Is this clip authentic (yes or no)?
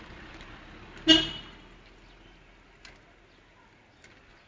yes